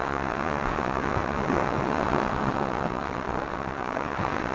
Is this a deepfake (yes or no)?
yes